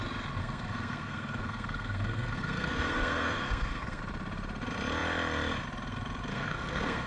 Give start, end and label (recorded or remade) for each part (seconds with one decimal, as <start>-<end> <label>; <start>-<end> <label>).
0.0-0.4 recorded; 0.4-4.0 remade; 4.0-6.3 recorded; 6.3-7.1 remade